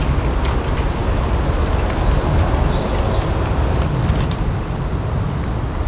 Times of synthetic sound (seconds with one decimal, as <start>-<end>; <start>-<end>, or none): none

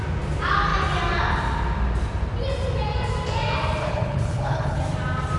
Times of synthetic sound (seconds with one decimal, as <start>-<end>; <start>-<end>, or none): 3.8-4.8

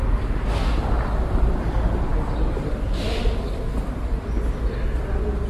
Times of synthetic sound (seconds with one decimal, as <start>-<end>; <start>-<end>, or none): none

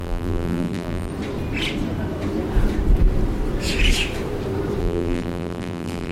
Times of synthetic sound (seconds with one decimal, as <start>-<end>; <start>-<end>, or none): 0.0-1.1; 4.8-6.1

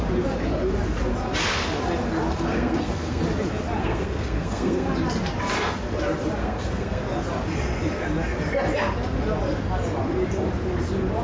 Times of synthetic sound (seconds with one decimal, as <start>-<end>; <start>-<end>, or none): 2.3-3.2; 3.8-4.9; 6.4-7.0

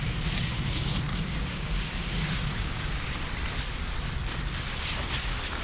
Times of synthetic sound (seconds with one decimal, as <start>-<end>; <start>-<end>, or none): 1.1-2.9